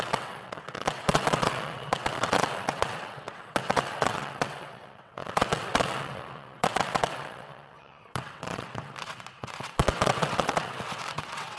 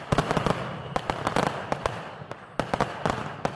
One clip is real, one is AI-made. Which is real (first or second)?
second